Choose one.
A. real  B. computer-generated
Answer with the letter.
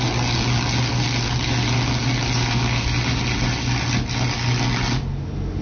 A